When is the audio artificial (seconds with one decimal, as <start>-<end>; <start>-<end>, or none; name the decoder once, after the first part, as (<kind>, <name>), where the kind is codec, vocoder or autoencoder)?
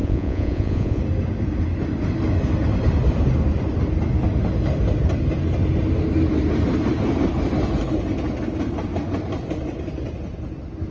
0.0-1.0 (vocoder, Vocos)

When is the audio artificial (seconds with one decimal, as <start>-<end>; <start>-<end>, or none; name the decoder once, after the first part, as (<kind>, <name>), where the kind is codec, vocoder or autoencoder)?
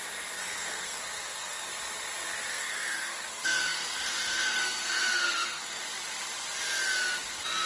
0.4-1.7 (codec, SNAC); 2.5-5.8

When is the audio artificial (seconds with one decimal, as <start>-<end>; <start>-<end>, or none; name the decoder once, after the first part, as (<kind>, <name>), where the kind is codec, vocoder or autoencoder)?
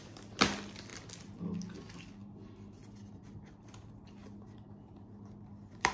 none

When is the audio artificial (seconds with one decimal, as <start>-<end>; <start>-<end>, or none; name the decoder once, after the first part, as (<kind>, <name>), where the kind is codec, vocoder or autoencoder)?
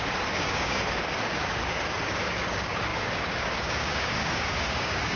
0.0-5.2 (codec, DAC)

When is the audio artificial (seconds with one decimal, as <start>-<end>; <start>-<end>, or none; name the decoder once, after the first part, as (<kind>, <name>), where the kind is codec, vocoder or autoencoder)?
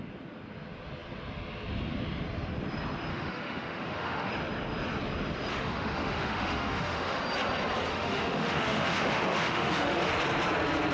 3.1-4.3 (autoencoder, DAC-VAE); 5.5-7.2; 7.9-10.1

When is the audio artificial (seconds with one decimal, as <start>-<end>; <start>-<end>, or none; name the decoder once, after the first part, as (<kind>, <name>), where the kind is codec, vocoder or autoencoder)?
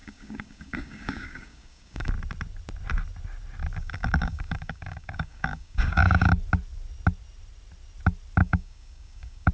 0.0-2.1 (codec, DAC); 3.8-6.3; 8.4-9.5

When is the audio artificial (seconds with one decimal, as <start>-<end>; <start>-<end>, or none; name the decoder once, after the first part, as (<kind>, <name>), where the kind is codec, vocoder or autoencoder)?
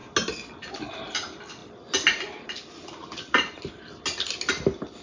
none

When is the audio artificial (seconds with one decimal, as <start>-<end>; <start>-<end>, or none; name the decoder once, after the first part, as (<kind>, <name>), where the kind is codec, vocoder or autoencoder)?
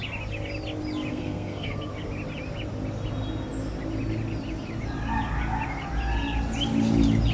1.1-1.9 (codec, SNAC)